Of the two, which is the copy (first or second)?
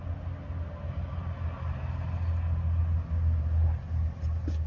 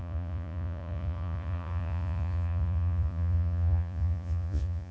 second